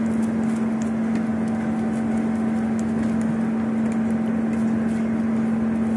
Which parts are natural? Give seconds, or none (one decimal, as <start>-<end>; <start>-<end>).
0.0-6.0